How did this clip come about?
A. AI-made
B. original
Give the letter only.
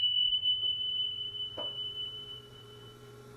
A